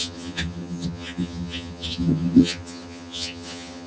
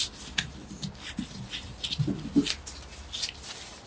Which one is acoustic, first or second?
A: second